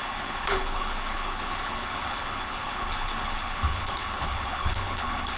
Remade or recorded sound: remade